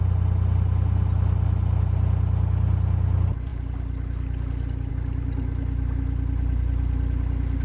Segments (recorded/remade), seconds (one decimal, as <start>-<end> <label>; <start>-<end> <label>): 0.0-7.6 recorded